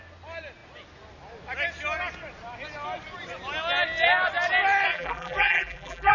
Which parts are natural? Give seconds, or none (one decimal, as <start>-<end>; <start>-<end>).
0.0-4.9